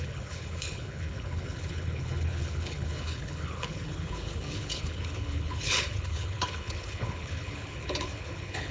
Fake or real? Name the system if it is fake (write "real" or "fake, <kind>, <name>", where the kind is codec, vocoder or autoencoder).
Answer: fake, codec, HILCodec